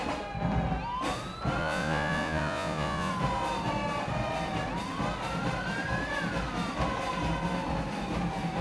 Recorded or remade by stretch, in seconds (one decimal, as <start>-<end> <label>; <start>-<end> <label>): 0.0-1.6 recorded; 1.6-3.1 remade; 3.1-8.6 recorded